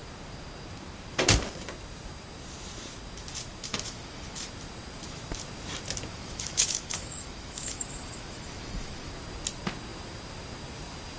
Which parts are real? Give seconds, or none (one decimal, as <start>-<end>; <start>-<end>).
0.0-3.7; 4.5-6.1; 9.1-11.2